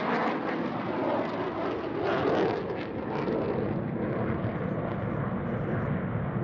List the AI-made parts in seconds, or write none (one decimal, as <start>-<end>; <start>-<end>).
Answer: none